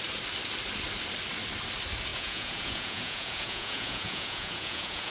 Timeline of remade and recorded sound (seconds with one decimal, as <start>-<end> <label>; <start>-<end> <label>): 0.0-2.1 recorded; 2.1-5.1 remade